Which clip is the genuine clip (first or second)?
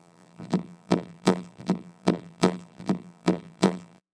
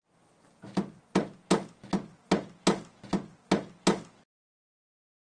second